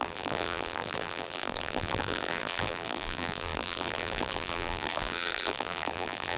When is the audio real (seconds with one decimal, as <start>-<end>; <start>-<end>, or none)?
none